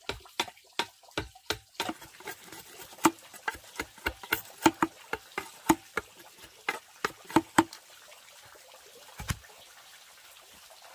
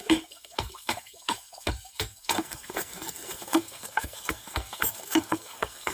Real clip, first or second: first